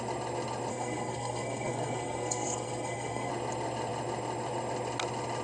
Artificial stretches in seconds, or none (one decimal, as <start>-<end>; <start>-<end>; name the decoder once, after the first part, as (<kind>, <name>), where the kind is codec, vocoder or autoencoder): 0.7-3.3 (codec, SNAC)